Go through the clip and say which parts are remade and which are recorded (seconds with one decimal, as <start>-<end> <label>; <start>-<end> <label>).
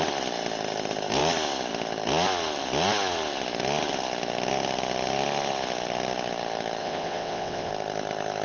0.0-6.8 recorded; 6.8-7.7 remade; 7.7-8.4 recorded